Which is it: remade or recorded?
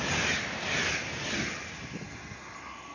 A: recorded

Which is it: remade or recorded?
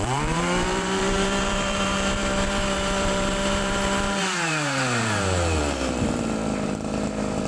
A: remade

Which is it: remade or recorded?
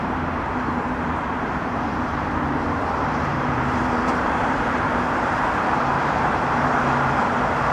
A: remade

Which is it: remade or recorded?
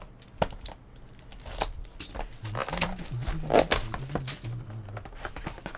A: recorded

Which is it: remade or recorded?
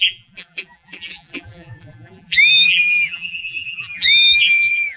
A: remade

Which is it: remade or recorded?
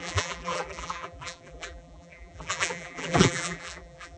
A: remade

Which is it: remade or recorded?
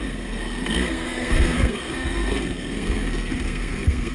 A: remade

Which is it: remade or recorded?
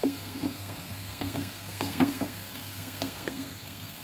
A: remade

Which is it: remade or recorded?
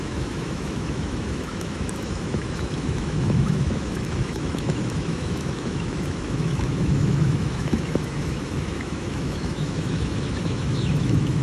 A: remade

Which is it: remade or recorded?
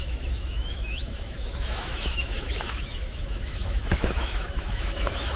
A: remade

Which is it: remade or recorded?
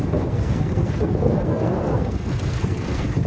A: remade